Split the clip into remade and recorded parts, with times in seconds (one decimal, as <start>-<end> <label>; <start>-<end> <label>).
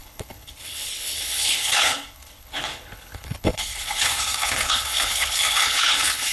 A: 0.0-6.3 remade